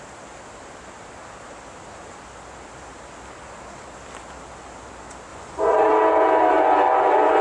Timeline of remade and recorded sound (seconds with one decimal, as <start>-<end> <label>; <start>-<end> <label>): 0.0-5.3 recorded; 5.3-5.9 remade; 5.9-7.4 recorded